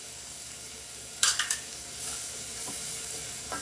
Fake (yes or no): yes